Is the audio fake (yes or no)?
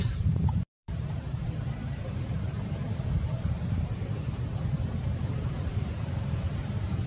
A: yes